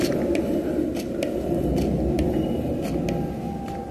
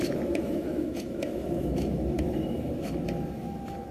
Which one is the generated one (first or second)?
second